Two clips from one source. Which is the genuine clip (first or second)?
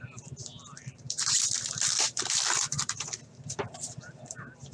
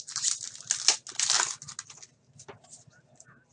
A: second